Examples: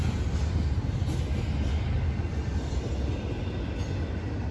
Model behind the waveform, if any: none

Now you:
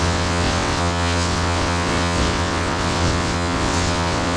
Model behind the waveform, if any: vocoder, WaveNeXt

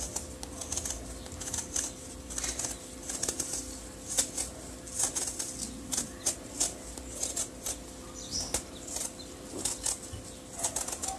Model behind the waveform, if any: none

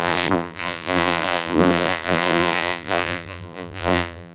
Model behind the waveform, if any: vocoder, BigVGAN v2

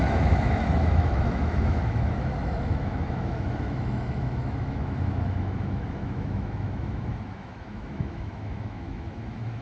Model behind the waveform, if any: autoencoder, DAC-VAE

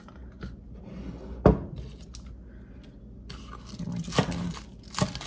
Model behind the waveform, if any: none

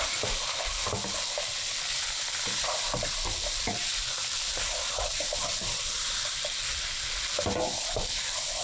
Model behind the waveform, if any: none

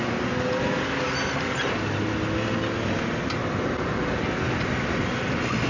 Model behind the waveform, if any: none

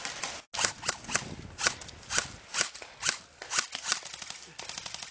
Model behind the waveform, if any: none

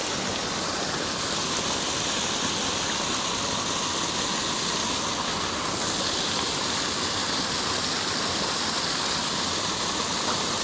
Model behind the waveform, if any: none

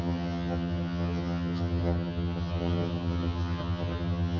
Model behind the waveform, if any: vocoder, HiFi-GAN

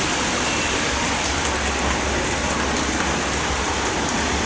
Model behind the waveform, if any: none